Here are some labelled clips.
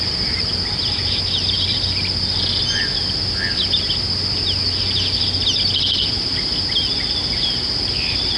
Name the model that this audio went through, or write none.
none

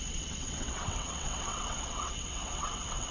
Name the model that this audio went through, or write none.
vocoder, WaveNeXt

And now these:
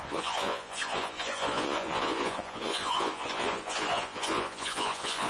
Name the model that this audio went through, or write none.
vocoder, Vocos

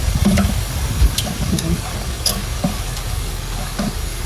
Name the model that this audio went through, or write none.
codec, DAC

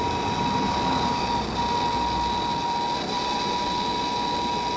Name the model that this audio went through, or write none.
none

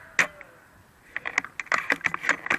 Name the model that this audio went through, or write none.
none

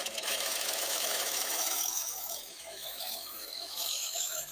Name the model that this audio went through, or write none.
autoencoder, DAC-VAE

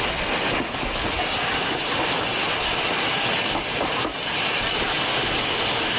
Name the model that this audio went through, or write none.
none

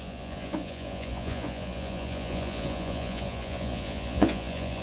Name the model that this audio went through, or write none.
vocoder, Vocos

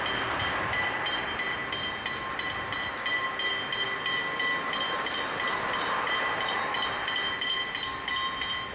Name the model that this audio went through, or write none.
none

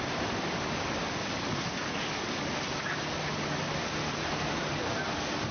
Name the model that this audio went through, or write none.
none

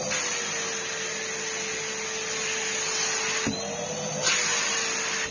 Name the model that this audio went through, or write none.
none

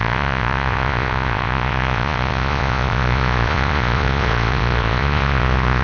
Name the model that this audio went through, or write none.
vocoder, Vocos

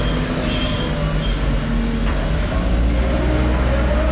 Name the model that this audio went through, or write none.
none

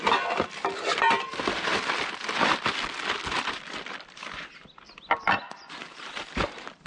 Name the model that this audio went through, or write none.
vocoder, BigVGAN v2